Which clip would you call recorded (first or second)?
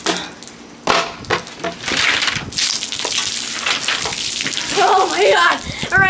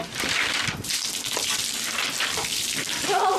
first